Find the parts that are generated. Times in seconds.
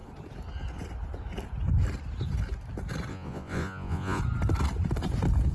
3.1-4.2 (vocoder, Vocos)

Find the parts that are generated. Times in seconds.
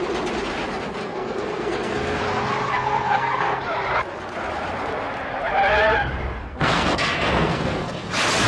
1.0-2.2 (codec, SNAC); 2.7-3.6; 6.4-8.1